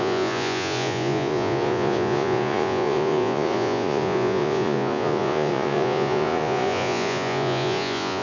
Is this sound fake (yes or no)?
yes